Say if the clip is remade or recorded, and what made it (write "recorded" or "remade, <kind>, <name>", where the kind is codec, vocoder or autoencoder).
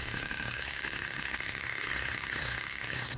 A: remade, codec, SNAC